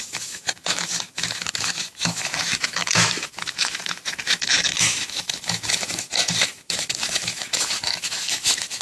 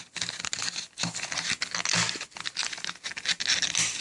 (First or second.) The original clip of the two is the second